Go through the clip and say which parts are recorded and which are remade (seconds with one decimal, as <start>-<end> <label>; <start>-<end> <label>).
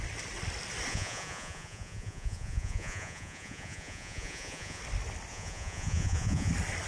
0.0-0.9 recorded; 0.9-4.8 remade; 4.8-5.3 recorded; 5.3-6.5 remade; 6.5-6.9 recorded